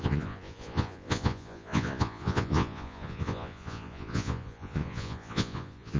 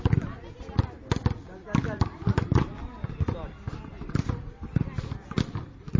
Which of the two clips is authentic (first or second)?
second